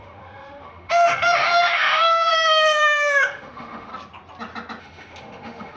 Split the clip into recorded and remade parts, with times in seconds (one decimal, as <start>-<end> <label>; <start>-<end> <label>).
0.0-3.9 remade; 3.9-4.8 recorded; 4.8-5.8 remade